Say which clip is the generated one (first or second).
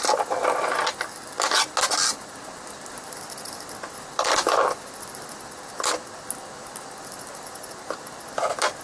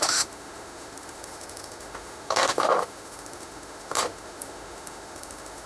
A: second